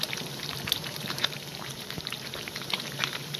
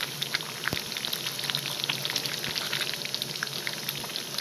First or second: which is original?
second